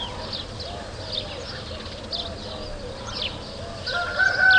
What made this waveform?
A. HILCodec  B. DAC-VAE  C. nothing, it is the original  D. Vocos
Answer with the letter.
C